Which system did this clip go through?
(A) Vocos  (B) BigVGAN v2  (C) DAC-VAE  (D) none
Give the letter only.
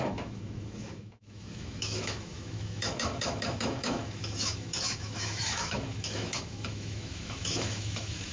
C